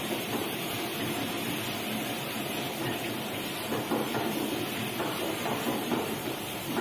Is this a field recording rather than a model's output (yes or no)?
no